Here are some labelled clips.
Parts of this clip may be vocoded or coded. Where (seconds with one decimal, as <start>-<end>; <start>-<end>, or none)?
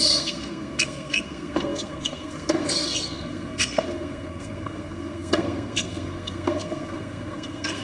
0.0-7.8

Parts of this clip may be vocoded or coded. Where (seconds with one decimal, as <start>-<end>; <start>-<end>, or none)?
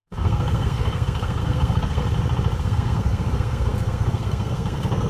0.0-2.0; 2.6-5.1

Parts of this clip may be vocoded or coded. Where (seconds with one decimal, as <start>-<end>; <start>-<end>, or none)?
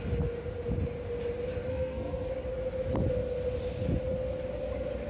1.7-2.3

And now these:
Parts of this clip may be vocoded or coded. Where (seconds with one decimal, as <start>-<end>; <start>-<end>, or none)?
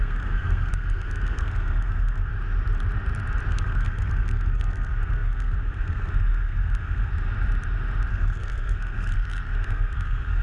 0.0-2.3; 3.5-7.1; 8.1-10.4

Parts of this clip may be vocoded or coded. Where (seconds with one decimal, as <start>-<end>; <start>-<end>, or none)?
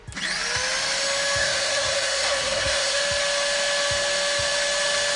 1.4-3.0